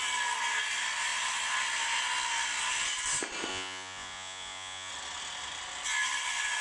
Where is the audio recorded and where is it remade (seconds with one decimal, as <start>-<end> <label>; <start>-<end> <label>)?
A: 0.0-3.5 recorded; 3.5-4.9 remade; 4.9-6.6 recorded